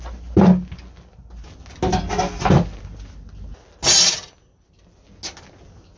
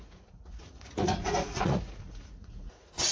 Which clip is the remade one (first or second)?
second